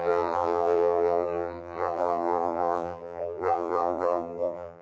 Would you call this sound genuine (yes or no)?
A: no